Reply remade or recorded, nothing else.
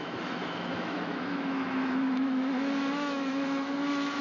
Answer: remade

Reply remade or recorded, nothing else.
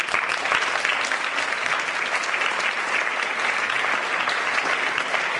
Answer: recorded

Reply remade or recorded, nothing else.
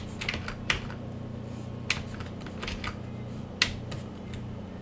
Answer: recorded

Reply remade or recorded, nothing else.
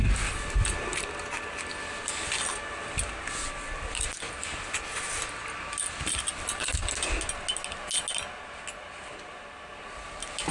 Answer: recorded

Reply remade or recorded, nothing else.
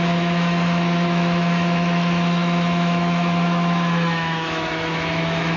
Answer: remade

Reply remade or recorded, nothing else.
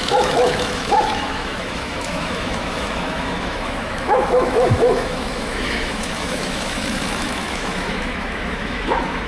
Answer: remade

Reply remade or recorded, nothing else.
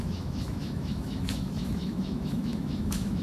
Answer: remade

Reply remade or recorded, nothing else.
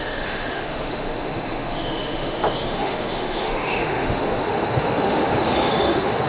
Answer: remade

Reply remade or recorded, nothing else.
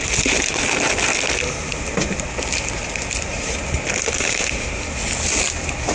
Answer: recorded